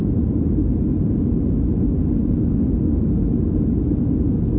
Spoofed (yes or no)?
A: no